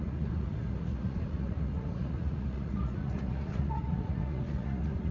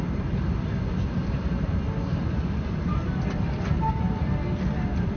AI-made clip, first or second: first